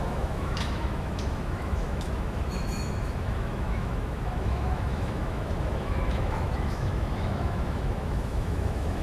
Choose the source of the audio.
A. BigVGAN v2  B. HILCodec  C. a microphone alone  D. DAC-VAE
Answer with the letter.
D